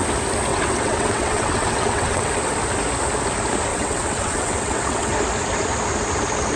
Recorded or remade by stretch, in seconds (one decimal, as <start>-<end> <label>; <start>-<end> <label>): 0.0-0.5 recorded; 0.5-2.3 remade; 2.3-3.7 recorded; 3.7-5.1 remade; 5.1-6.6 recorded